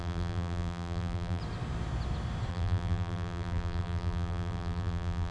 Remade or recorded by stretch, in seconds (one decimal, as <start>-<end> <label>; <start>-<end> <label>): 0.0-1.4 remade; 1.4-2.5 recorded; 2.5-5.3 remade